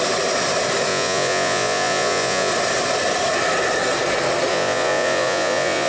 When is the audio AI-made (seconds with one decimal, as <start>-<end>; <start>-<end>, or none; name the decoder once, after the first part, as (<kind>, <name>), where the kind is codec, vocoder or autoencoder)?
0.9-2.5 (vocoder, Vocos); 4.5-5.9